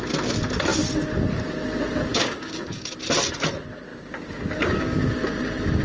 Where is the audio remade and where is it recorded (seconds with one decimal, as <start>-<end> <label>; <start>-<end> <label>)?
0.0-2.1 recorded; 2.1-2.9 remade; 2.9-3.9 recorded; 3.9-5.1 remade; 5.1-5.8 recorded